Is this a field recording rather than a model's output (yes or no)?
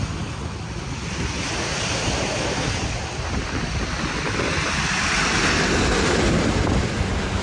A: yes